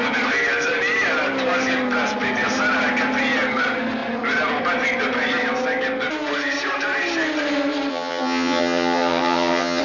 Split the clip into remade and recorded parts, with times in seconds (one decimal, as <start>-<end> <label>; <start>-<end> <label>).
0.0-7.9 recorded; 7.9-9.8 remade